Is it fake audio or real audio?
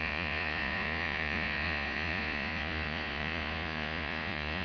fake